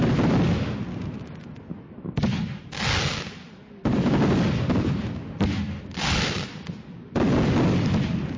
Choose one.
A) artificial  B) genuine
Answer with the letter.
B